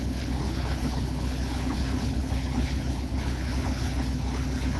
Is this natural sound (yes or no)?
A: no